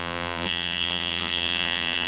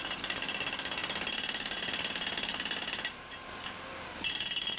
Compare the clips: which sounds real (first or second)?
second